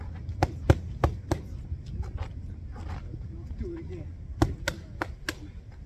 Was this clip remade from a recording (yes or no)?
no